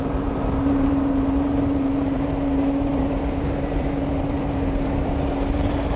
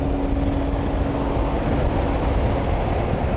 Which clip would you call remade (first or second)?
first